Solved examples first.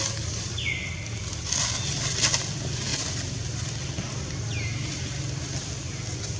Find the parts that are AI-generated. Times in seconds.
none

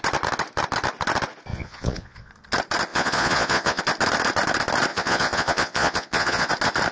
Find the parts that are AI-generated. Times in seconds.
1.5-2.3 (vocoder, Vocos); 2.9-3.8; 4.9-6.5

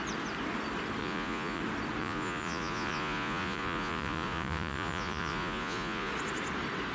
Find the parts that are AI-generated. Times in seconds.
1.0-1.6 (vocoder, Vocos); 2.0-6.1

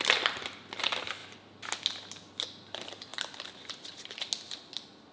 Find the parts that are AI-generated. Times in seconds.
none